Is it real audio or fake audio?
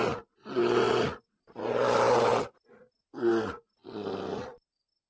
real